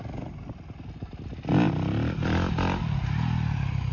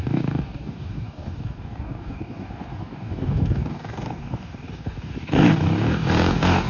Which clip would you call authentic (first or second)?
first